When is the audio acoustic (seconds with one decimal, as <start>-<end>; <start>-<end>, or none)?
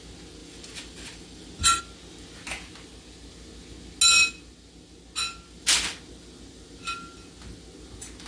0.0-0.4; 1.8-8.3